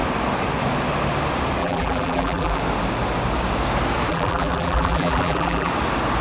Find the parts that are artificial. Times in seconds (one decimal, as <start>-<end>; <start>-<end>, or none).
1.6-2.6; 4.1-5.7